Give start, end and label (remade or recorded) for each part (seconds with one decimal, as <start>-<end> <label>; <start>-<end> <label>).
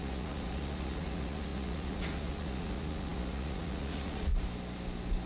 0.0-4.3 remade; 4.3-5.3 recorded